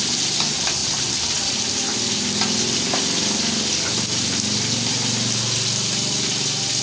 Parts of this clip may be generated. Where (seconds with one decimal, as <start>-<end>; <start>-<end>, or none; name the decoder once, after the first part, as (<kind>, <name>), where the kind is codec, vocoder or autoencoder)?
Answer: none